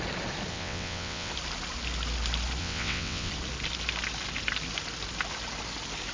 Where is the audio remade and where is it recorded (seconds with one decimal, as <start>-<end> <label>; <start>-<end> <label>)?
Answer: 0.0-0.5 recorded; 0.5-1.3 remade; 1.3-2.6 recorded; 2.6-3.3 remade; 3.3-6.1 recorded